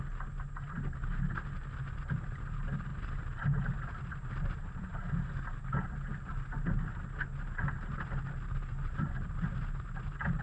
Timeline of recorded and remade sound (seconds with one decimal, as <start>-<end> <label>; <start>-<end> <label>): 0.0-10.4 recorded

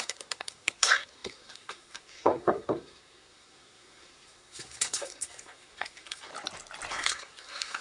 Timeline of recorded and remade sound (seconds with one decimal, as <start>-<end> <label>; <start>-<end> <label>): 0.0-6.3 remade; 6.3-6.9 recorded; 6.9-7.8 remade

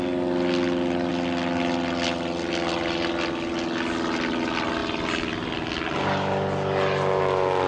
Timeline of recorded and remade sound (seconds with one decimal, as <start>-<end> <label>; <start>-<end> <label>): 0.0-7.7 recorded

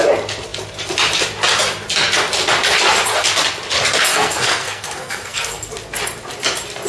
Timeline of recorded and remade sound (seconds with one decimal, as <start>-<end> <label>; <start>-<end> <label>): 0.0-4.1 recorded; 4.1-5.7 remade; 5.7-6.9 recorded

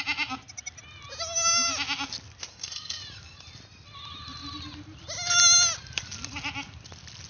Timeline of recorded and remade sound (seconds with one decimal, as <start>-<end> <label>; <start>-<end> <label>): 0.0-2.5 recorded; 2.5-3.0 remade; 3.0-7.3 recorded